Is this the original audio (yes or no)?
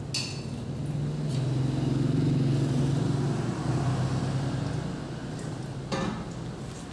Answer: yes